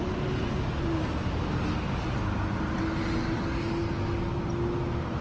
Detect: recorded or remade recorded